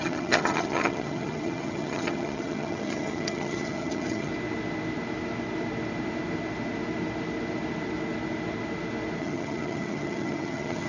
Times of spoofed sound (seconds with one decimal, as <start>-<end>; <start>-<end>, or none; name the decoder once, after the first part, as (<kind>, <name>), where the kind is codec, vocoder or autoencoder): 0.0-4.3 (vocoder, HiFi-GAN); 9.2-10.9